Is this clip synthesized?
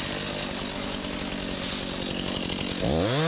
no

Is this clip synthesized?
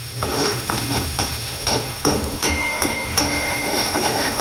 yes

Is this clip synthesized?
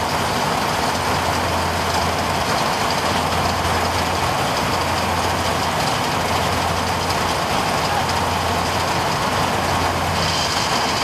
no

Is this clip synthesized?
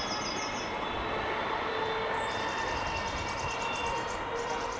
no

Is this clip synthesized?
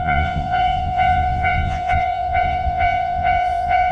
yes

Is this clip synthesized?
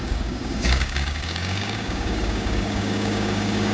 yes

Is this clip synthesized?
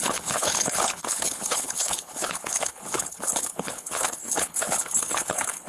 yes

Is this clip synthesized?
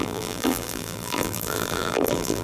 yes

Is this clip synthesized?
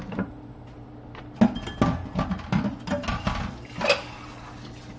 no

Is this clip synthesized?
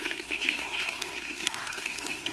yes